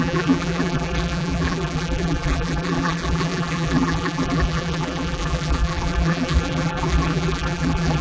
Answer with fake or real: fake